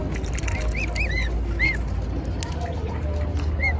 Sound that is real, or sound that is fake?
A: real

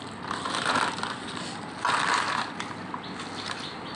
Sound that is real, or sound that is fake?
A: real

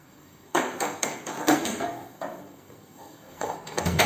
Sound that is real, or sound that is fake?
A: fake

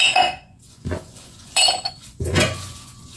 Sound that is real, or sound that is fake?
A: fake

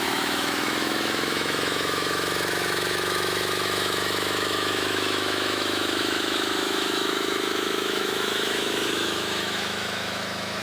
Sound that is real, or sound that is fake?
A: fake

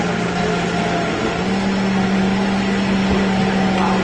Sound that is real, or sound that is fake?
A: real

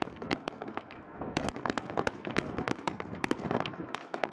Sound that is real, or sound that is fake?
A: fake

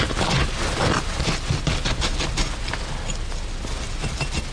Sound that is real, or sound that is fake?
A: real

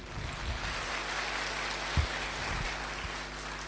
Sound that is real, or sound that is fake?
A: real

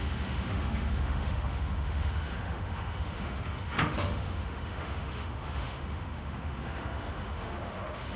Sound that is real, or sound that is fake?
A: fake